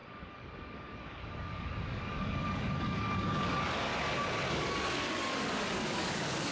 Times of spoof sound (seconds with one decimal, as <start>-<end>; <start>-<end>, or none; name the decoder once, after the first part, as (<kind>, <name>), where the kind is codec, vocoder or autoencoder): 0.0-3.9 (codec, DAC); 4.5-6.5